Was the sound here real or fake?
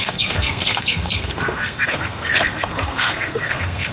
fake